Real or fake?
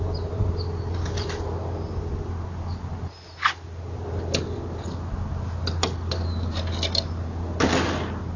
real